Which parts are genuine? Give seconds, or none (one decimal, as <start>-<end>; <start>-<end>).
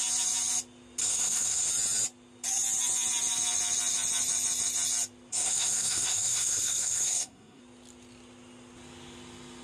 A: 0.0-1.0; 1.7-5.3; 7.6-9.6